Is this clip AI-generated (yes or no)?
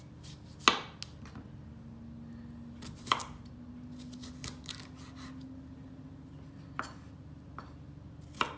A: no